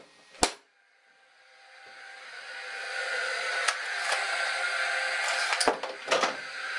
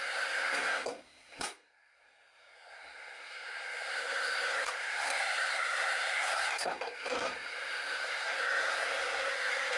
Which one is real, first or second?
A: first